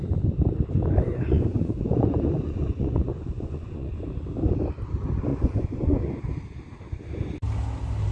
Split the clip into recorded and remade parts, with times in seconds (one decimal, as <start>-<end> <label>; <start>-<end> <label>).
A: 0.0-1.1 recorded; 1.1-3.9 remade; 3.9-5.3 recorded; 5.3-6.2 remade; 6.2-8.1 recorded